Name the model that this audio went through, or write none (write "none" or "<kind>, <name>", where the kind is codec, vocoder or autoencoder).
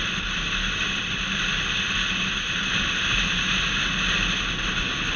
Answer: none